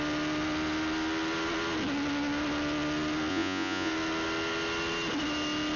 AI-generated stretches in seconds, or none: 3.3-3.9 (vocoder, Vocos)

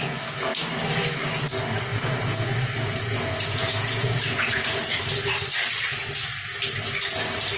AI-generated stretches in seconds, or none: 1.9-5.0 (vocoder, Vocos)